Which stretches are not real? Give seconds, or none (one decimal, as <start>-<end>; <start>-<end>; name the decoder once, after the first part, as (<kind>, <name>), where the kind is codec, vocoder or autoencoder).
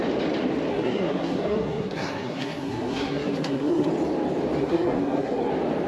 0.7-3.9 (codec, SNAC); 4.6-5.5